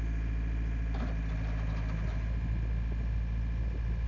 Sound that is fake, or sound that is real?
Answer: real